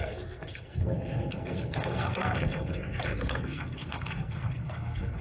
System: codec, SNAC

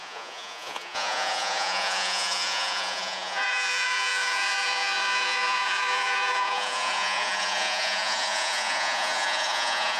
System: vocoder, Vocos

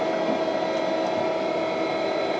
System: none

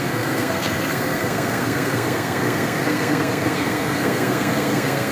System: codec, SNAC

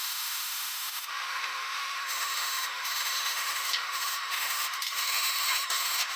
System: autoencoder, DAC-VAE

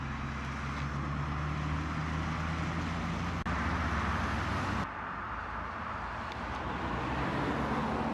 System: none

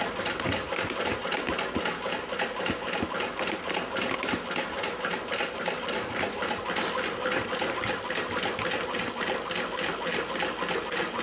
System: none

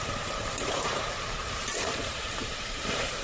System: vocoder, BigVGAN v2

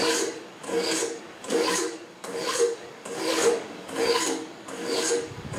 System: codec, DAC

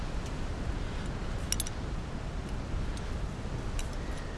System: none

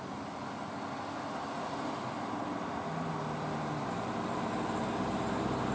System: none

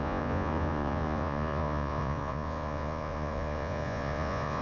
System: vocoder, Vocos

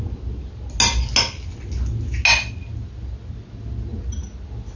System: none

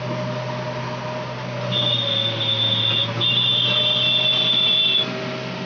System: none